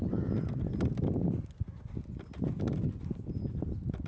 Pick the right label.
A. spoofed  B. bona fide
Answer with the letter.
B